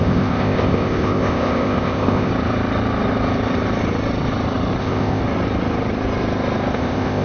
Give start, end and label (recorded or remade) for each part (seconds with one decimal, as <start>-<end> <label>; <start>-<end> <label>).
0.0-2.3 remade; 2.3-4.8 recorded; 4.8-5.2 remade; 5.2-6.7 recorded; 6.7-7.2 remade